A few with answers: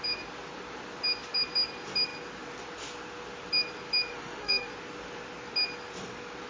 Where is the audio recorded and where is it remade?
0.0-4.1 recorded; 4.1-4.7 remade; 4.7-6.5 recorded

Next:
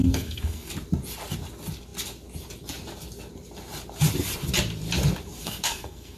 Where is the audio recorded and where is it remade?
0.0-0.7 remade; 0.7-5.4 recorded; 5.4-6.2 remade

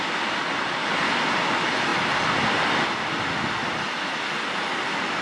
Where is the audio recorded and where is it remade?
0.0-5.2 recorded